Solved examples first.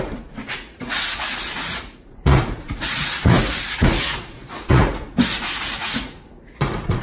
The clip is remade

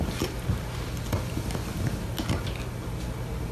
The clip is recorded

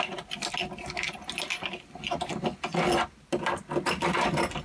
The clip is recorded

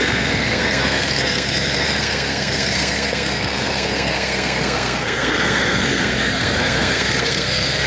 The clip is remade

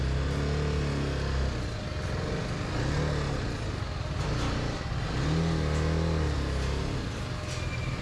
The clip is recorded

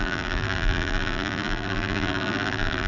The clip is remade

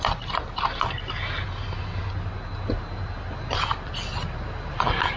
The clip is recorded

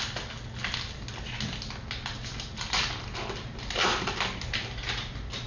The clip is recorded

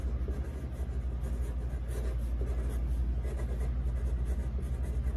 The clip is recorded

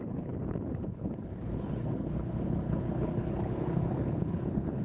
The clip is remade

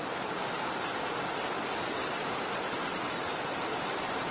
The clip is recorded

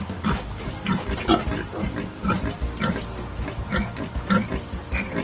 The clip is recorded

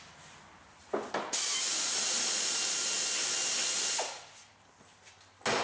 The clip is recorded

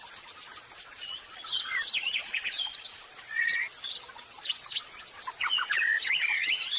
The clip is remade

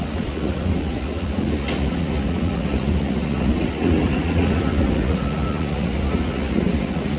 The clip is remade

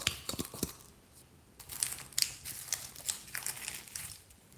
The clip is recorded